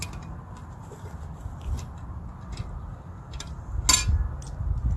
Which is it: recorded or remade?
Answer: recorded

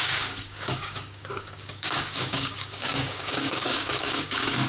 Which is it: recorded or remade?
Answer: remade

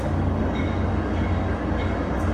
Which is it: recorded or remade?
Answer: remade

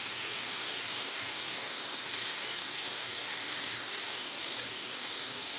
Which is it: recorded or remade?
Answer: remade